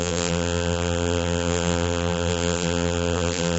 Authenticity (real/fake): fake